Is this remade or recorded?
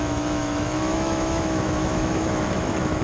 remade